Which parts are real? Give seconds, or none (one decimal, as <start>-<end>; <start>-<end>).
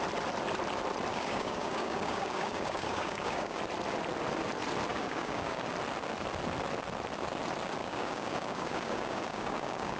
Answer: 0.0-1.1; 3.6-4.9; 5.7-7.8